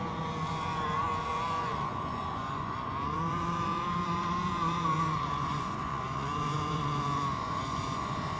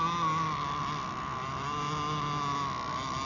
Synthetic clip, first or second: first